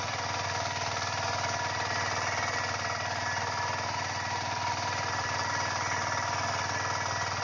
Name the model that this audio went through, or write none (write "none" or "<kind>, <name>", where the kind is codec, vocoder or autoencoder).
none